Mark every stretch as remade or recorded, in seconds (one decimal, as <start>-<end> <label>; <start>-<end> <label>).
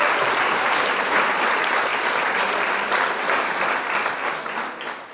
0.0-1.9 remade; 1.9-5.1 recorded